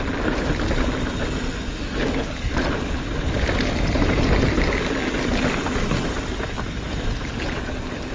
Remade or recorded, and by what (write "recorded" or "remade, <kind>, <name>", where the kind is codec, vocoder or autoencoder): recorded